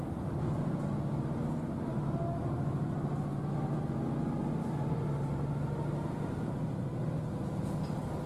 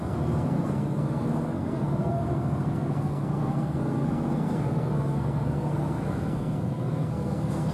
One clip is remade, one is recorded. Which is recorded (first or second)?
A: first